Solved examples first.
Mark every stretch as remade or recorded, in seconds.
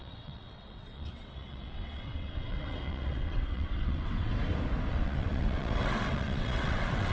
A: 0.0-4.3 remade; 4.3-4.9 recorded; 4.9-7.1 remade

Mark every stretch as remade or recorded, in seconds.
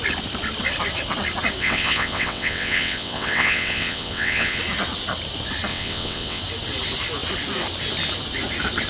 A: 0.0-1.6 recorded; 1.6-4.6 remade; 4.6-5.7 recorded; 5.7-6.4 remade; 6.4-8.9 recorded